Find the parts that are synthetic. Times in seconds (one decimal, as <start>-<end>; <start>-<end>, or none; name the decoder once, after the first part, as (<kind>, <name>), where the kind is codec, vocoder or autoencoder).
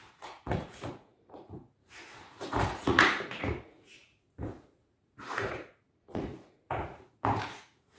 0.0-8.0 (vocoder, Vocos)